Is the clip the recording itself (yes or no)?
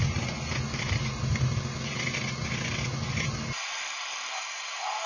yes